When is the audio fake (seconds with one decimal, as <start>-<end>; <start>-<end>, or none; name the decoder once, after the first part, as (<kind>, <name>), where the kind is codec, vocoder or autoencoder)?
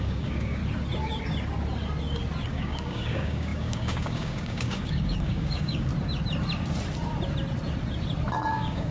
0.0-0.6 (codec, DAC); 2.5-5.9; 8.5-8.9